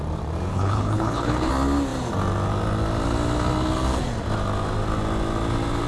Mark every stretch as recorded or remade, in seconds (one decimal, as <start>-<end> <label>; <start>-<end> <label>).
0.0-0.5 recorded; 0.5-1.5 remade; 1.5-5.9 recorded